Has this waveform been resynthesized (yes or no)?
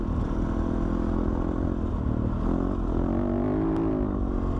no